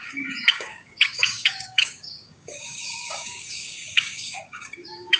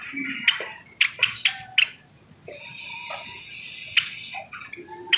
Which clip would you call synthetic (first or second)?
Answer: first